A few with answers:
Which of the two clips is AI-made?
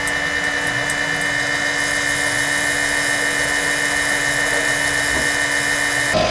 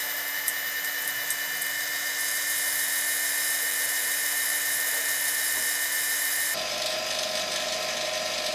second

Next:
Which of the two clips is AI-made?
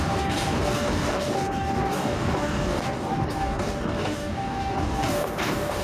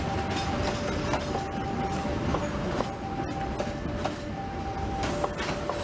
first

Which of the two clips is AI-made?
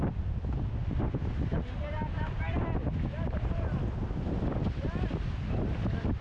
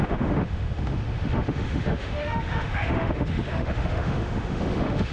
second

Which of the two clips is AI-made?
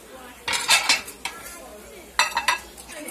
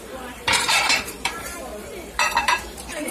second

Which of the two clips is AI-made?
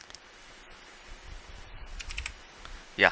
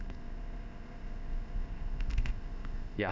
second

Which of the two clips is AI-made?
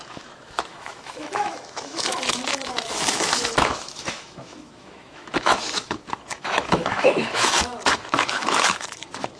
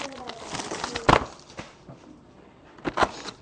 first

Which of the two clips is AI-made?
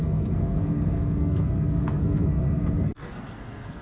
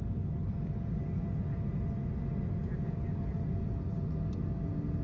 first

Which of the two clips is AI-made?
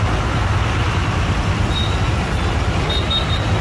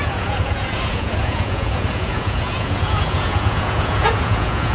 second